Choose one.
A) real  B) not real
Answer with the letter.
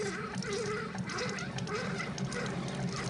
A